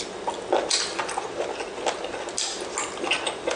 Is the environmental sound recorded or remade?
recorded